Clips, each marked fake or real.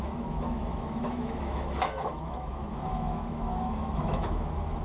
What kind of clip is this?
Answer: fake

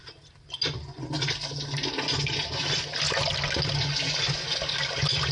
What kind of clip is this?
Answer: real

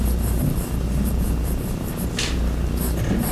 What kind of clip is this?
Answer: real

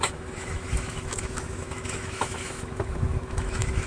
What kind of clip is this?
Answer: fake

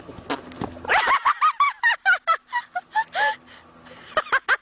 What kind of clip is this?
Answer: real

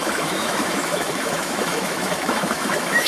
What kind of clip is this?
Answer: fake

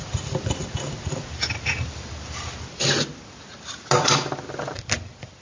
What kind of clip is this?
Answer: real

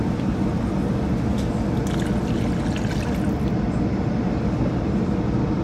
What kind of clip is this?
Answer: real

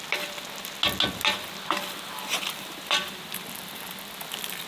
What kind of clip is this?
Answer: real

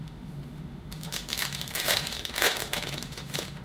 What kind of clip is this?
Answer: fake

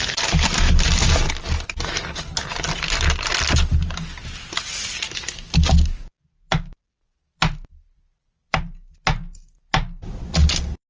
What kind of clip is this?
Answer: real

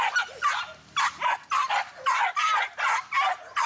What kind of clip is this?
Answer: real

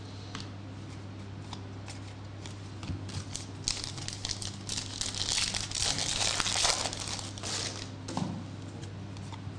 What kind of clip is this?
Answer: real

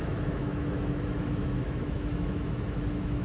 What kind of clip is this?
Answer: fake